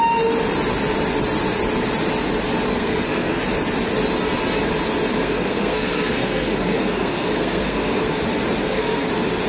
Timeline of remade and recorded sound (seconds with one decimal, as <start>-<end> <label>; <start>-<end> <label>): 0.0-2.7 recorded; 2.7-3.4 remade; 3.4-5.2 recorded; 5.2-8.1 remade; 8.1-8.6 recorded; 8.6-9.1 remade; 9.1-9.5 recorded